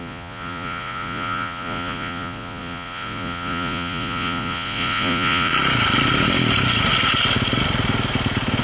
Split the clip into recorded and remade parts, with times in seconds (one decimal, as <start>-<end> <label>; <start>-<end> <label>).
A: 0.0-5.5 remade; 5.5-8.6 recorded